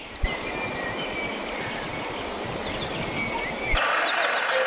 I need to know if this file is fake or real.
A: real